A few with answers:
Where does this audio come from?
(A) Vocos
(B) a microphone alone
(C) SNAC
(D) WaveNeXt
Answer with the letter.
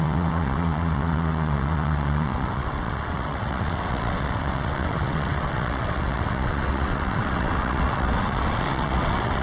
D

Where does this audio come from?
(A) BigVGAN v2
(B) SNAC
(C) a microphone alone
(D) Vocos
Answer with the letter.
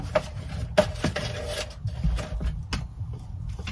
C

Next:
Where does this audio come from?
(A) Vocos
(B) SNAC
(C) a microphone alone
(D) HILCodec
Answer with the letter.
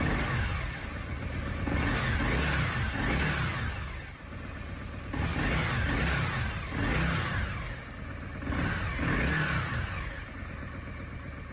C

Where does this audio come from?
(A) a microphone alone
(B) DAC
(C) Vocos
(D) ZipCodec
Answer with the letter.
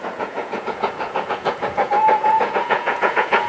C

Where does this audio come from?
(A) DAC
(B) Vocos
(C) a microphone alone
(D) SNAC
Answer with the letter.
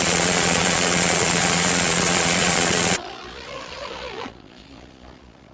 B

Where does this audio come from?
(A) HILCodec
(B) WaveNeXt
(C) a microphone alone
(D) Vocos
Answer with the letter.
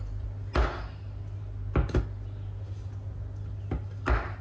C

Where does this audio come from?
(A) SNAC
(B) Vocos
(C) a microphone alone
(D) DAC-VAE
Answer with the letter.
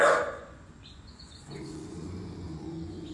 B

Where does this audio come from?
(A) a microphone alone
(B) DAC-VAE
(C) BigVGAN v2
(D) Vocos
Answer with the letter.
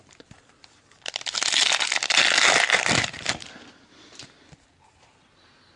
A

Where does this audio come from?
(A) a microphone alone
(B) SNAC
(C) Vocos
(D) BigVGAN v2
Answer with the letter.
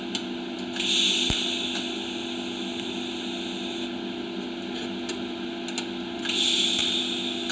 A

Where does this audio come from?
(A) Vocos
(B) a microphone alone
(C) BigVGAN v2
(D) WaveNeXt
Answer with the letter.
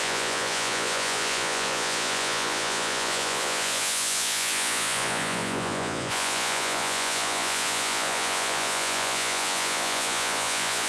A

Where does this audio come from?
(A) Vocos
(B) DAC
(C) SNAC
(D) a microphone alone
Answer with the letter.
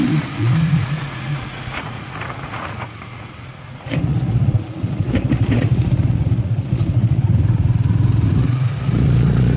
A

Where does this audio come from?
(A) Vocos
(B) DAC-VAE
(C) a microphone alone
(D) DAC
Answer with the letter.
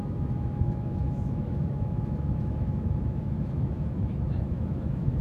B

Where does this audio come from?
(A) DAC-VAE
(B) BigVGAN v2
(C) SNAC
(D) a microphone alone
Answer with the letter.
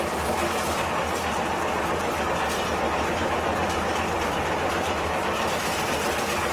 D